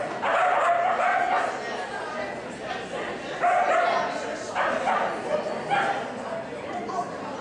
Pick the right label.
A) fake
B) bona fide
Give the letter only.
B